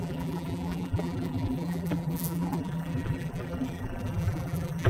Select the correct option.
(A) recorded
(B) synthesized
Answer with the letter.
B